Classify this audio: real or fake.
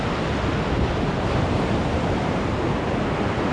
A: fake